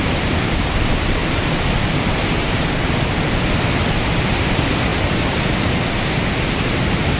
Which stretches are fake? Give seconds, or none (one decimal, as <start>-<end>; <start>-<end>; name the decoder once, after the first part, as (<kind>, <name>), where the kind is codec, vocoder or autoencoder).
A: 0.0-1.2 (vocoder, BigVGAN v2); 2.1-2.8; 3.9-7.2